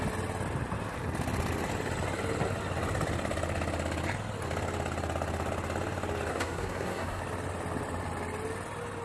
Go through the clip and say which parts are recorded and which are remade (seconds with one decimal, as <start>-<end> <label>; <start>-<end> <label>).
0.0-6.3 recorded; 6.3-7.2 remade; 7.2-9.0 recorded

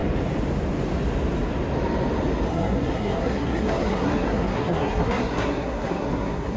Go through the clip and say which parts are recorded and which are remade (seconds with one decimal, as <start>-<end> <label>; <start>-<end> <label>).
0.0-2.5 recorded; 2.5-6.6 remade

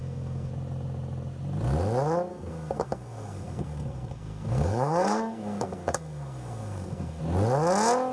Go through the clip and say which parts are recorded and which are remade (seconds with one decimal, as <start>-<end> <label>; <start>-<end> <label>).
0.0-0.5 remade; 0.5-2.3 recorded; 2.3-7.2 remade; 7.2-8.1 recorded

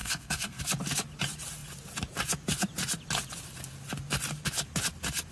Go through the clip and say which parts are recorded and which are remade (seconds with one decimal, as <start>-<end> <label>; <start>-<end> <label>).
0.0-0.6 remade; 0.6-5.3 recorded